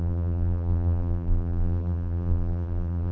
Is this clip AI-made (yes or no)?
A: yes